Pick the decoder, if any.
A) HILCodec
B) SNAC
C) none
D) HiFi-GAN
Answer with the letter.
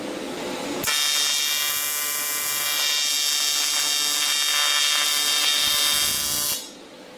C